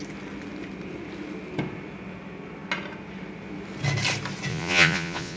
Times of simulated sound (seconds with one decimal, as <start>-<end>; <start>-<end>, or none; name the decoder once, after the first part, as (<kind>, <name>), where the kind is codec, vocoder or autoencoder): 4.5-5.4 (vocoder, Vocos)